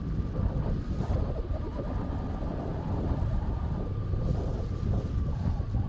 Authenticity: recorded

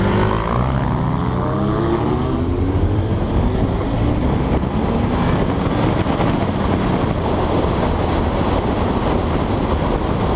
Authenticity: recorded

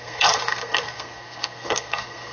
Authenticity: remade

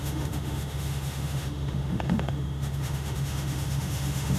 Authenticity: remade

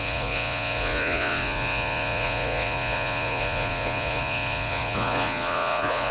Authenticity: remade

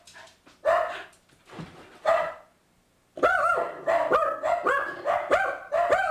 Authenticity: recorded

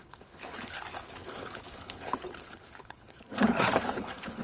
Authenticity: remade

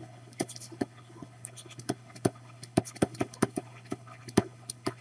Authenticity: remade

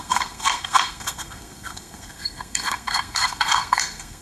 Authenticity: remade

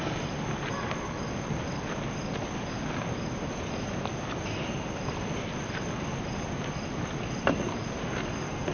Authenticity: recorded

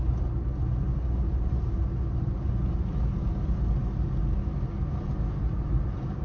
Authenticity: recorded